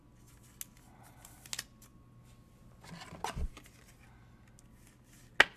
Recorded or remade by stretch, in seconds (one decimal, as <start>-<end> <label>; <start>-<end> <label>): 0.0-5.6 recorded